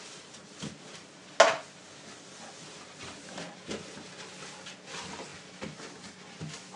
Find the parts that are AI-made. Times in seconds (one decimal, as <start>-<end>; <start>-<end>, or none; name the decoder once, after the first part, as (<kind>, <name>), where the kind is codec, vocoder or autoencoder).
none